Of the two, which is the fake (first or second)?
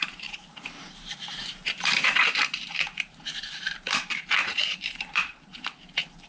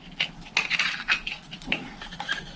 first